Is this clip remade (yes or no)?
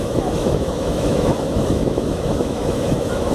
yes